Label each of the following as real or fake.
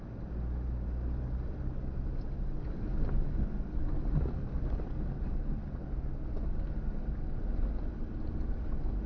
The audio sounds real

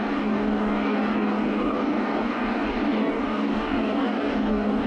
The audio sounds fake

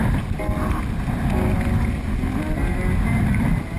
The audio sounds real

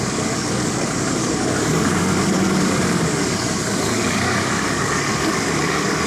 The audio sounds fake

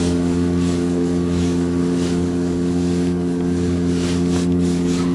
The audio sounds fake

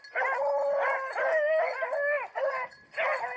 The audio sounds real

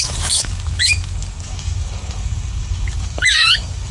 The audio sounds fake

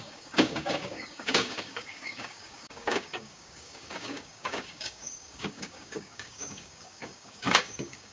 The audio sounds fake